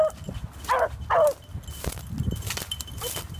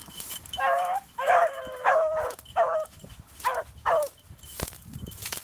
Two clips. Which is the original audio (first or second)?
first